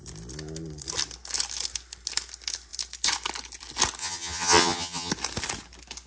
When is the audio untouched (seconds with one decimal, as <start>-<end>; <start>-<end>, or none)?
0.0-4.0; 5.1-6.1